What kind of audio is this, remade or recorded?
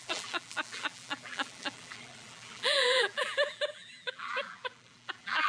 remade